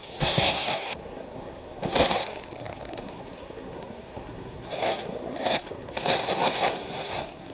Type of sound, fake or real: fake